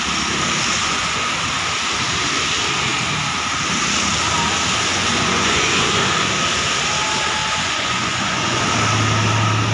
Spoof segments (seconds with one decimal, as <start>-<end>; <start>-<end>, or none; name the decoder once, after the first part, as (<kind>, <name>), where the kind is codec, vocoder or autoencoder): 0.8-1.3 (vocoder, Vocos); 4.9-6.0; 7.4-8.6